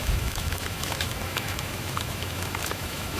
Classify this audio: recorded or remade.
remade